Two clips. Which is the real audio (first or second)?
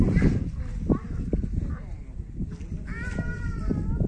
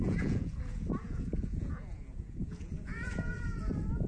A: first